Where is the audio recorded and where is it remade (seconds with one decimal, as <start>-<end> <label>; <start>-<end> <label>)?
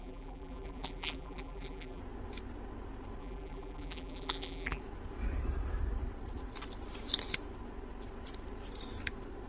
0.0-2.0 remade; 2.0-3.2 recorded; 3.2-4.8 remade; 4.8-9.5 recorded